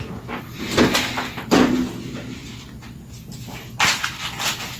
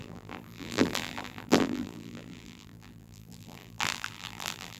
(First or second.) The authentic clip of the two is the first